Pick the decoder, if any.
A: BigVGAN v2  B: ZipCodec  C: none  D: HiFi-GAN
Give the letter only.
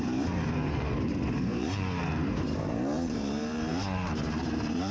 A